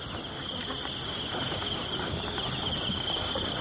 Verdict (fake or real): real